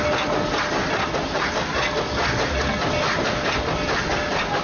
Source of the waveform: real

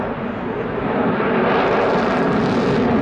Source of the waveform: real